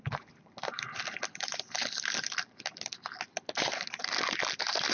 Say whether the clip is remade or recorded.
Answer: recorded